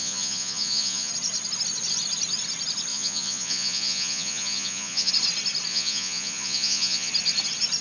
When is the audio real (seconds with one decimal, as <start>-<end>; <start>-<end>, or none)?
1.1-2.9; 5.1-5.7; 7.1-7.8